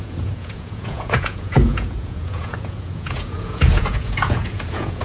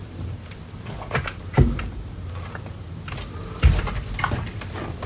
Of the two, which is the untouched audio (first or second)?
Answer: second